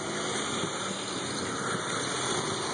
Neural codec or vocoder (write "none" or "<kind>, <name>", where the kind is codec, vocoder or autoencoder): none